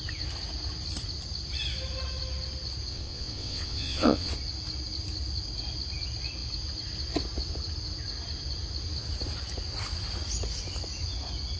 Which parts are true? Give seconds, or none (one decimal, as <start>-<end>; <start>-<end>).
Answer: 0.0-2.9; 4.3-11.6